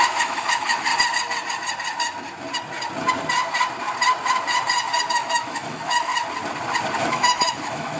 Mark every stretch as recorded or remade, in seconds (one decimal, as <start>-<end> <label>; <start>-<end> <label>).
0.0-0.9 remade; 0.9-5.1 recorded; 5.1-6.1 remade; 6.1-7.1 recorded; 7.1-8.0 remade

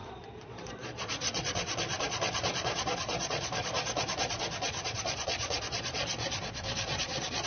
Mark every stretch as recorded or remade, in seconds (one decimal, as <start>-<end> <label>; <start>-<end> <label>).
0.0-7.5 remade

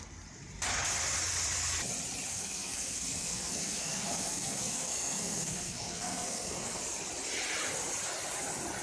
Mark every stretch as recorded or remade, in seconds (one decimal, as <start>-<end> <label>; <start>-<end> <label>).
0.0-2.3 recorded; 2.3-6.8 remade; 6.8-8.8 recorded

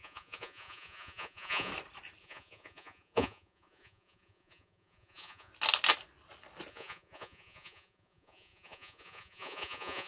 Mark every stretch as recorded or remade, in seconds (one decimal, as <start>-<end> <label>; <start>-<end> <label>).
0.0-1.7 remade; 1.7-2.2 recorded; 2.2-5.5 remade; 5.5-6.7 recorded; 6.7-10.1 remade

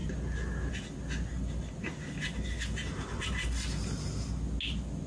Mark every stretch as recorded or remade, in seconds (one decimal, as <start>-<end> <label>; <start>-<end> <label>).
0.0-1.3 recorded; 1.3-1.9 remade; 1.9-2.8 recorded; 2.8-3.5 remade; 3.5-5.1 recorded

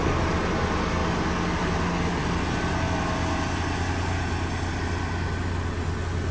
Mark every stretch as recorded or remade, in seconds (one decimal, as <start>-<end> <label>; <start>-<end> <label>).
0.0-6.3 recorded

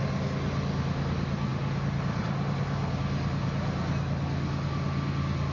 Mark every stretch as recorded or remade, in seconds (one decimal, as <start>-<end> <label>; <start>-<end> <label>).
0.0-5.5 recorded